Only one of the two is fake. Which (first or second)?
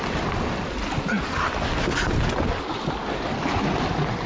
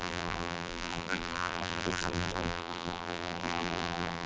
second